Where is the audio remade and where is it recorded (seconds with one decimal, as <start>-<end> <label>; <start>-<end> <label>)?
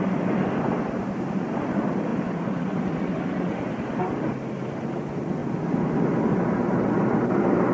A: 0.0-2.1 recorded; 2.1-5.0 remade; 5.0-7.7 recorded